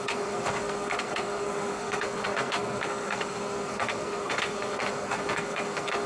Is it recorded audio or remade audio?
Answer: remade